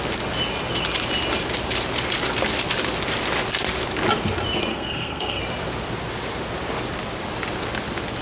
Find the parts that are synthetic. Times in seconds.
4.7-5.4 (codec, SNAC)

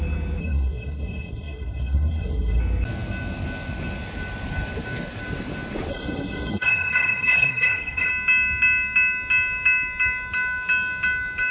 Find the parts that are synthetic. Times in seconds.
0.4-2.6 (codec, SNAC); 5.9-8.1